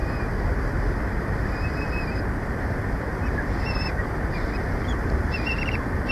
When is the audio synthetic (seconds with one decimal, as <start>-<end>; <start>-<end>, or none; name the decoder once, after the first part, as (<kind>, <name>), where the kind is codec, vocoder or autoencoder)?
3.1-6.1 (vocoder, BigVGAN v2)

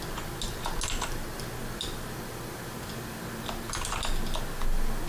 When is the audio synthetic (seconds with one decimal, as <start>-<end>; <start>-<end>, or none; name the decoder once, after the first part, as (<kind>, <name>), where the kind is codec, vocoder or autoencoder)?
none

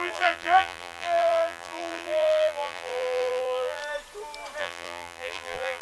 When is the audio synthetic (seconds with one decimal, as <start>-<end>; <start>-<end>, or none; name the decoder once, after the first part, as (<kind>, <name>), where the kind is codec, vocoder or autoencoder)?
0.0-3.8 (vocoder, BigVGAN v2); 4.6-5.8

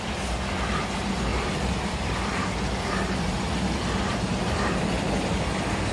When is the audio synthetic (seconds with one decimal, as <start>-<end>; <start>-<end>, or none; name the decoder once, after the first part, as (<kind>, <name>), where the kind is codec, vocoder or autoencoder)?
1.3-4.8 (vocoder, BigVGAN v2)

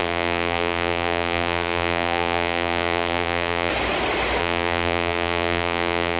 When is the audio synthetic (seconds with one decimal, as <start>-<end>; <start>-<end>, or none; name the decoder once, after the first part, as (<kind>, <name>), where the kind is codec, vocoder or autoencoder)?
0.0-3.7 (vocoder, BigVGAN v2); 4.4-6.2

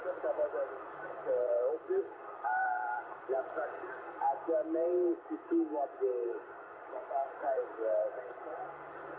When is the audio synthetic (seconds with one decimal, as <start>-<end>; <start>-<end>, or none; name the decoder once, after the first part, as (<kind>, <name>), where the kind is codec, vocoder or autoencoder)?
7.5-8.4 (vocoder, BigVGAN v2)

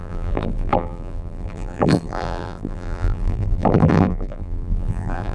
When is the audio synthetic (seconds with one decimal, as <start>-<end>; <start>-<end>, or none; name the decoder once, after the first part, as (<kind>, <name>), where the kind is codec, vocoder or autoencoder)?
0.0-5.3 (vocoder, BigVGAN v2)

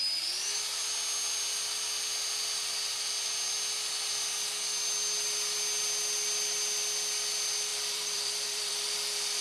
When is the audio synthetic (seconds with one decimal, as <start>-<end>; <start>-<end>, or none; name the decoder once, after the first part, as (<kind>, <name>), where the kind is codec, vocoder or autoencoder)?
7.7-9.4 (vocoder, BigVGAN v2)